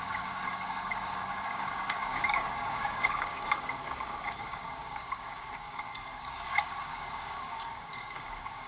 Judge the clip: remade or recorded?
remade